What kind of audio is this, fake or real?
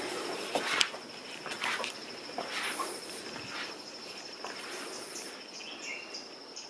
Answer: real